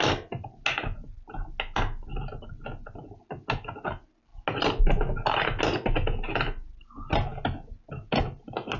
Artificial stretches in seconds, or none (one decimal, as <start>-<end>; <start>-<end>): none